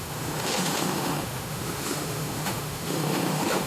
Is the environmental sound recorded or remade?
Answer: remade